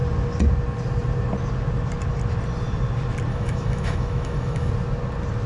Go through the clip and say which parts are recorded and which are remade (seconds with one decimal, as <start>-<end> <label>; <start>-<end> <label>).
0.0-3.3 recorded; 3.3-4.7 remade; 4.7-5.5 recorded